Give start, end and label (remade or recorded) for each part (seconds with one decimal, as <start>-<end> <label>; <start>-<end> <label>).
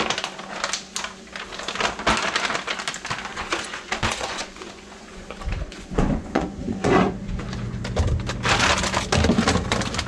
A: 0.0-3.3 recorded; 3.3-7.8 remade; 7.8-10.1 recorded